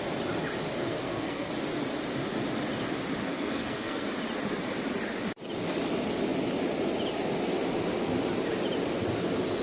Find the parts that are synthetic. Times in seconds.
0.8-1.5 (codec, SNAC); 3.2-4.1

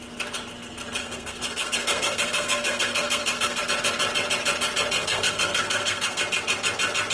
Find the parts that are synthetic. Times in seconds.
1.0-3.6 (codec, SNAC); 5.0-6.2